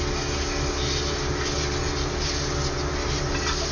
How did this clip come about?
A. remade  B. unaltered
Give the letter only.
B